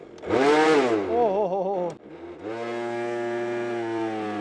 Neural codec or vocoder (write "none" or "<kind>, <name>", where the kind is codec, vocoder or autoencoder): none